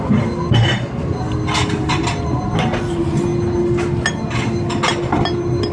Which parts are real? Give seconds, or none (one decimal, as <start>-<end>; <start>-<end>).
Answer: 0.0-5.7